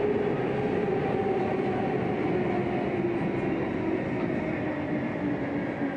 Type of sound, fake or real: real